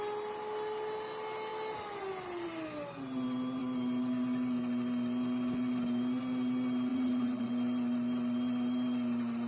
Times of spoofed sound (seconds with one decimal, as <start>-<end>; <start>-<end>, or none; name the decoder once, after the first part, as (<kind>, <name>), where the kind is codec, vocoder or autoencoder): 6.9-7.5 (vocoder, Vocos)